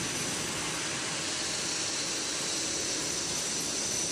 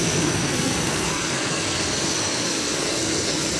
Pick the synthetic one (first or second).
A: second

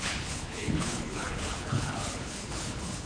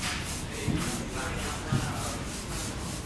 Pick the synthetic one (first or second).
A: first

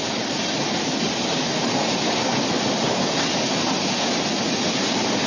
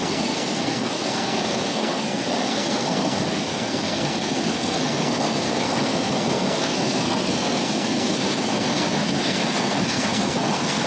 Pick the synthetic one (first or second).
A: second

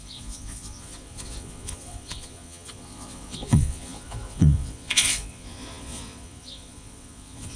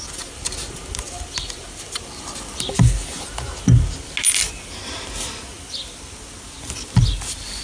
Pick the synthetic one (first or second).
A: first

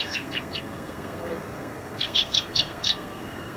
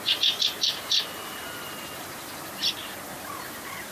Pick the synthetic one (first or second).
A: first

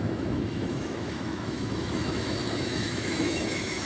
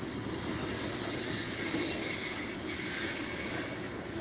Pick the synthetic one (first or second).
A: first